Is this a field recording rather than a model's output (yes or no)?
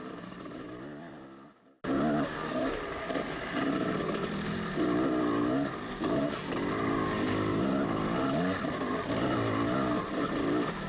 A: yes